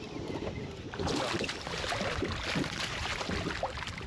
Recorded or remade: remade